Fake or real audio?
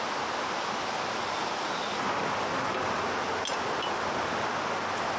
real